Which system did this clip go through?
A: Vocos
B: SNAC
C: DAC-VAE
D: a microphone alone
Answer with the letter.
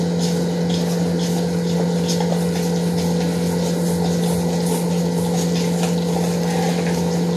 D